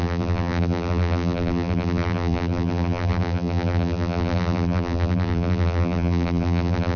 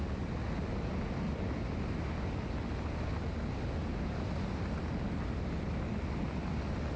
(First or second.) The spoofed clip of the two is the first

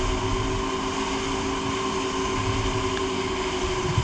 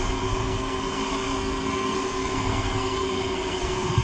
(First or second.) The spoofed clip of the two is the second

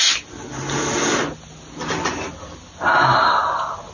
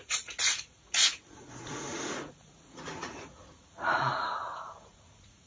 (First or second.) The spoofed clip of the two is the second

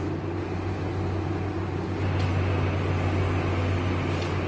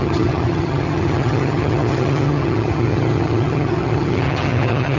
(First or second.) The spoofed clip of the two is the second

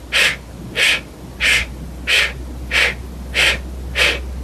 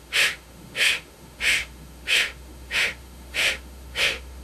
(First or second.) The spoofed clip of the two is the second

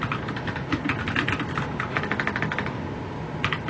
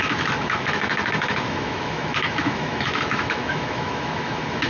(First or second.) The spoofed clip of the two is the second